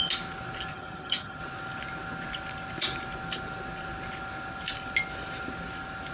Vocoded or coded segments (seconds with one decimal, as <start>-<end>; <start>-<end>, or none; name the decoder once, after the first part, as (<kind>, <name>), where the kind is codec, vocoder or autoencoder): 0.7-1.4 (vocoder, HiFi-GAN)